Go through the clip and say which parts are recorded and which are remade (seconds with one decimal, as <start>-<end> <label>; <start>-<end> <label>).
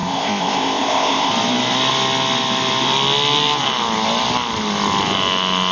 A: 0.0-1.3 remade; 1.3-5.7 recorded